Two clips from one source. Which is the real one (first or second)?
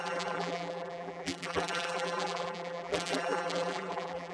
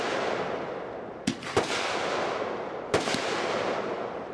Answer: second